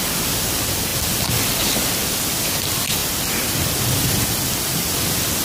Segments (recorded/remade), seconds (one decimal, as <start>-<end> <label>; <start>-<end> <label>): 0.0-2.0 recorded; 2.0-2.6 remade; 2.6-3.0 recorded; 3.0-5.0 remade; 5.0-5.4 recorded